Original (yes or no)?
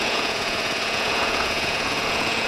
no